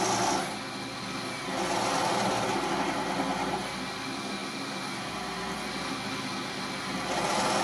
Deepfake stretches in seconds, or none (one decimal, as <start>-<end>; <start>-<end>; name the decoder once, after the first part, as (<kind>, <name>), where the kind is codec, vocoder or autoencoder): none